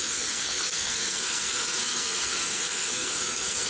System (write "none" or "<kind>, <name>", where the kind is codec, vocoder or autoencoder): codec, SNAC